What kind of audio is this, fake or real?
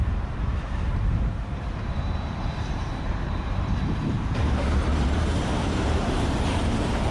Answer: fake